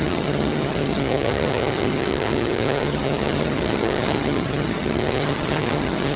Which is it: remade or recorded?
remade